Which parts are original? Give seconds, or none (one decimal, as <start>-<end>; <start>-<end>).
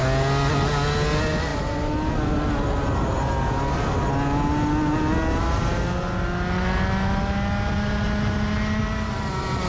0.0-9.7